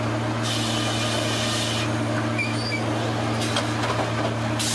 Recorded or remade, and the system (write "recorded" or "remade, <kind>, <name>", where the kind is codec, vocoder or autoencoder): recorded